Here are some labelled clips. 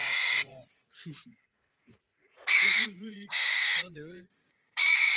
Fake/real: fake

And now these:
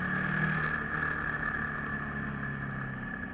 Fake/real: real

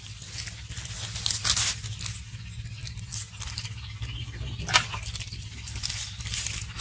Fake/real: real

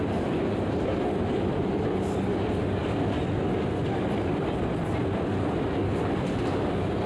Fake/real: real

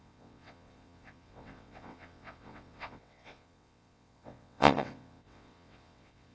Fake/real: fake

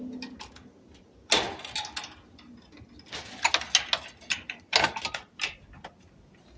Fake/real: real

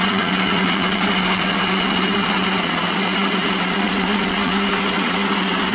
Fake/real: fake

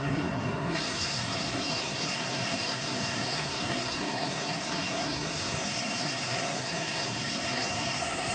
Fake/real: fake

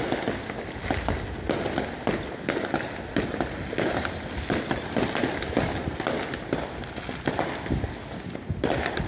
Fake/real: real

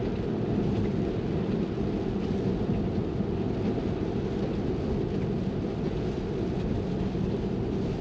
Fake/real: real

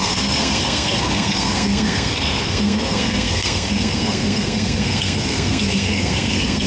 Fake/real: fake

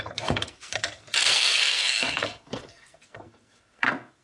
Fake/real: fake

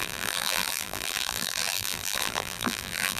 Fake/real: fake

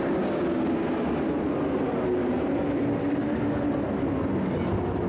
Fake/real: real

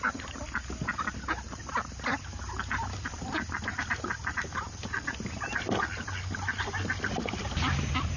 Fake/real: real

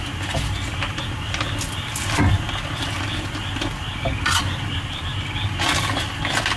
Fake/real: real